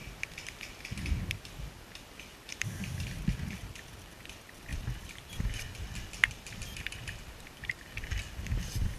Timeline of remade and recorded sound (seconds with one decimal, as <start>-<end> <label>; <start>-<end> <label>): 0.0-1.1 remade; 1.1-4.7 recorded; 4.7-5.2 remade; 5.2-6.2 recorded; 6.2-7.2 remade; 7.2-9.0 recorded